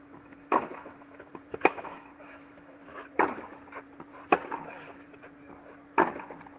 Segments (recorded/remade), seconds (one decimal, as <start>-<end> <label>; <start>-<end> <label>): 0.0-2.9 remade; 2.9-6.6 recorded